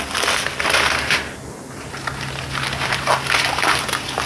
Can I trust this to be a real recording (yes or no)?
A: yes